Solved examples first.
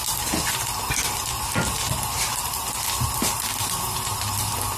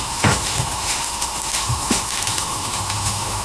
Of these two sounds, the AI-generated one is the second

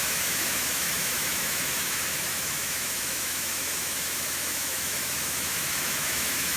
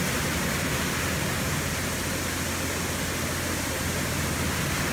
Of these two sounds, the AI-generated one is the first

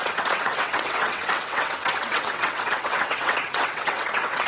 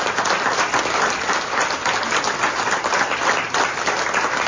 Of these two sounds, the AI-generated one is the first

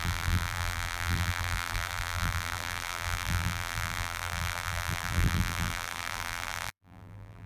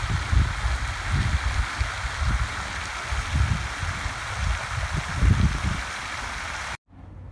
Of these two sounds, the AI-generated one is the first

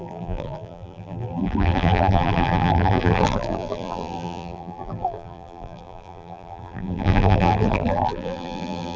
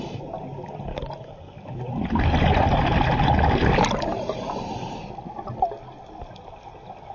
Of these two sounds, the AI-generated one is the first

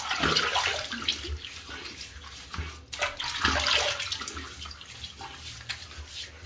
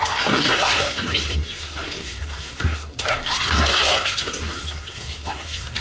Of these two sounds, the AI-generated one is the second